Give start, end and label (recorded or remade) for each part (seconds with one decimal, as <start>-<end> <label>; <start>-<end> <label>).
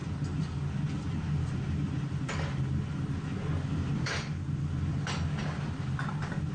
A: 0.0-6.5 recorded